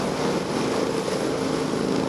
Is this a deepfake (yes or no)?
no